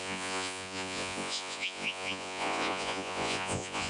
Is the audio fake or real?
fake